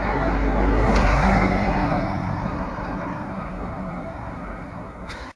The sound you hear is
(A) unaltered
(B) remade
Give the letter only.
B